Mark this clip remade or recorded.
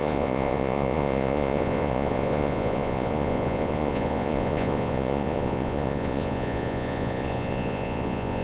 remade